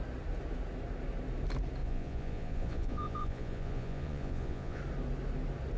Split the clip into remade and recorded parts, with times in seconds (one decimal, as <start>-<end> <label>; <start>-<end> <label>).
0.0-1.8 recorded; 1.8-4.8 remade; 4.8-5.8 recorded